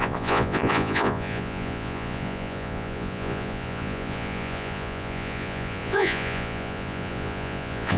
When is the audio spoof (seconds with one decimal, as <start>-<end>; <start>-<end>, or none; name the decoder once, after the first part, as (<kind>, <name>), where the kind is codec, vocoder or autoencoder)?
0.0-8.0 (vocoder, Vocos)